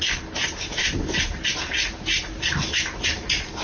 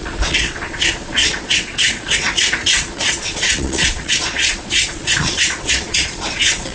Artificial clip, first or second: second